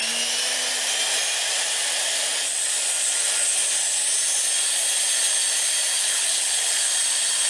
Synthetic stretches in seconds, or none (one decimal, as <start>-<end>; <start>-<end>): 6.0-6.9